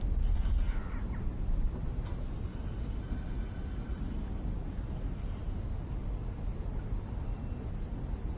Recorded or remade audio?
recorded